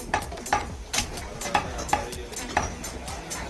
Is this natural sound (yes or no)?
yes